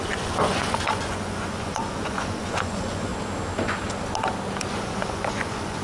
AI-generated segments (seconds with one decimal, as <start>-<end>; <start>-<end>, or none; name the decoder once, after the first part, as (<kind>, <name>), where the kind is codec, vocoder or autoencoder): 0.0-3.1 (vocoder, Vocos); 4.7-5.8